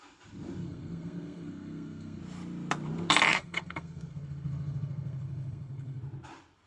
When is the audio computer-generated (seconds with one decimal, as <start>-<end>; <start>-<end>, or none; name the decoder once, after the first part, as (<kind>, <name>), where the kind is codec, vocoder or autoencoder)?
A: 0.6-2.2 (codec, SNAC); 3.3-6.0